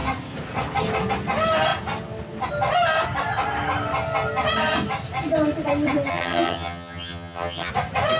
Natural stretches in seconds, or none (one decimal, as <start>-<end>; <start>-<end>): 0.0-6.1; 7.7-8.2

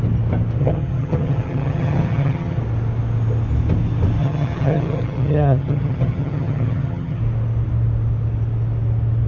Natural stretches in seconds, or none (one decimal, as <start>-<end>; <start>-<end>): 0.0-0.6; 2.6-4.2; 7.2-9.3

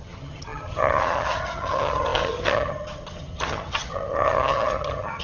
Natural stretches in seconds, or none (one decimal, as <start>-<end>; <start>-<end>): none

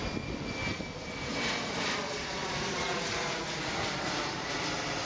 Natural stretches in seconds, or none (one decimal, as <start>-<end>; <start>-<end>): 0.0-5.0

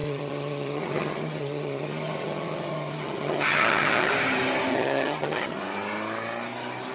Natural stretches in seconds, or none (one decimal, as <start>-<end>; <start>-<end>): 4.1-4.7; 5.6-6.9